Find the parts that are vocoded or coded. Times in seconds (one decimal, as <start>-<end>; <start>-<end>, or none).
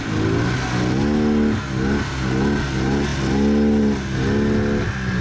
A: none